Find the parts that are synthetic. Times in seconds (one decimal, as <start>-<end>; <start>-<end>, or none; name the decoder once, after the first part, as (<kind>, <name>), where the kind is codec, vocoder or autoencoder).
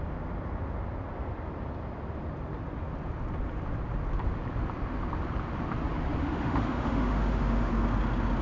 6.2-7.7 (autoencoder, DAC-VAE)